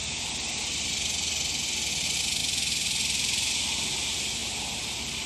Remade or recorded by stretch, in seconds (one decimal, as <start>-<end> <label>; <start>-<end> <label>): 0.0-2.4 recorded; 2.4-3.9 remade; 3.9-4.4 recorded; 4.4-5.3 remade